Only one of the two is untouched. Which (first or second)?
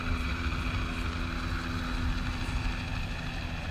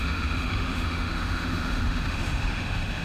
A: first